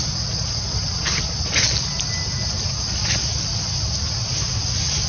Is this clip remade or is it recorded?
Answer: recorded